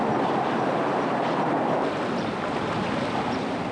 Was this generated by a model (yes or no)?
no